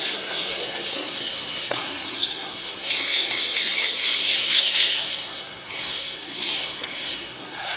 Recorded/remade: remade